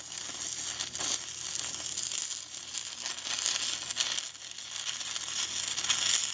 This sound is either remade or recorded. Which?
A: recorded